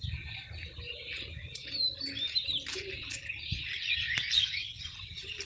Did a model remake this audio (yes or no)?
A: no